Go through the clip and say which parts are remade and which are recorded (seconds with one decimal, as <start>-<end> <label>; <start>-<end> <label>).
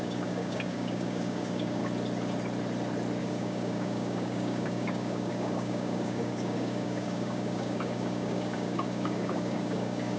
0.0-1.8 remade; 1.8-3.2 recorded; 3.2-10.2 remade